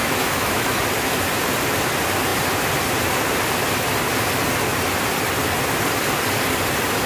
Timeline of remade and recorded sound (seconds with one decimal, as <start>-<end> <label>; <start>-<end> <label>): 0.0-0.8 remade; 0.8-7.1 recorded